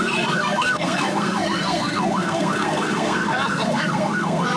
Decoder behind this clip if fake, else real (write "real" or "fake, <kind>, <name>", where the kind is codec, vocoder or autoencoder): fake, codec, SNAC